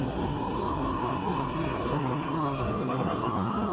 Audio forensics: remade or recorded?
remade